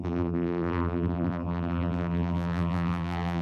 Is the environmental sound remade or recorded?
remade